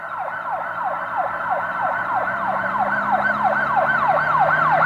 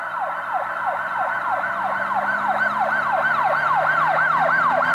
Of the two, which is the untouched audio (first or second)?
second